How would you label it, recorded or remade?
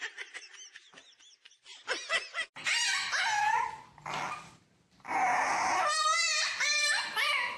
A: recorded